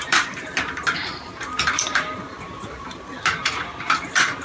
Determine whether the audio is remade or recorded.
remade